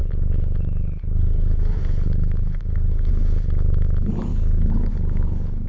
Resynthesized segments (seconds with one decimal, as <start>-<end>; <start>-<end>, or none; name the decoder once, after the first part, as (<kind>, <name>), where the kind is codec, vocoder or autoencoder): 0.0-3.1 (codec, HILCodec); 4.3-5.7